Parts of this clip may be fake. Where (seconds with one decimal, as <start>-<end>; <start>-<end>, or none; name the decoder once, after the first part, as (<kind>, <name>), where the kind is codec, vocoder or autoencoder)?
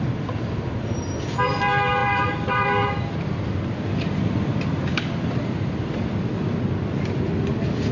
2.0-6.7 (vocoder, BigVGAN v2)